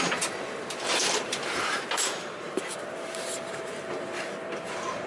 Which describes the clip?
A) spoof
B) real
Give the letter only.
A